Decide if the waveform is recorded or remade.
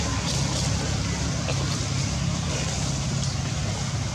recorded